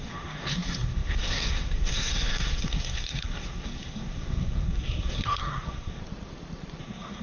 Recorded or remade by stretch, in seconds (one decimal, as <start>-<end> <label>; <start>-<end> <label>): 0.0-6.0 remade; 6.0-6.8 recorded; 6.8-7.2 remade